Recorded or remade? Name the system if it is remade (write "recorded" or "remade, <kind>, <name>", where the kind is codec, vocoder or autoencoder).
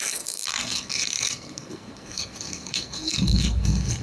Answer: remade, codec, SNAC